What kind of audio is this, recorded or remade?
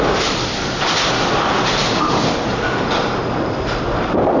remade